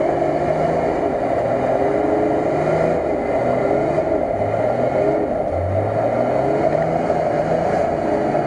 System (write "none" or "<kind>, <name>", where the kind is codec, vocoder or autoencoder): none